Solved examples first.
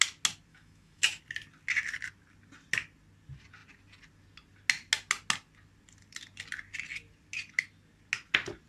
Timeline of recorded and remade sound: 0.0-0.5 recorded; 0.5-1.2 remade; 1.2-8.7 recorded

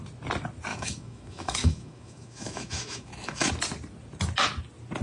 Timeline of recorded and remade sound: 0.0-0.7 recorded; 0.7-3.5 remade; 3.5-5.0 recorded

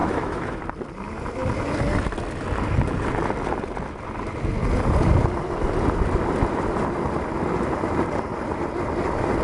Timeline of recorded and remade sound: 0.0-0.6 remade; 0.6-9.4 recorded

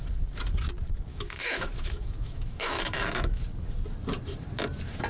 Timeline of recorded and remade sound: 0.0-1.1 recorded; 1.1-3.4 remade; 3.4-5.1 recorded

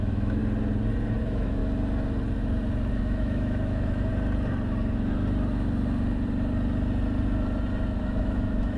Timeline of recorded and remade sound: 0.0-0.4 remade; 0.4-1.2 recorded; 1.2-1.6 remade; 1.6-2.9 recorded; 2.9-4.1 remade; 4.1-8.0 recorded; 8.0-8.8 remade